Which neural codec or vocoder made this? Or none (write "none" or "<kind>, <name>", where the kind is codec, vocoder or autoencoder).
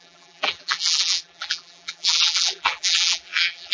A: vocoder, BigVGAN v2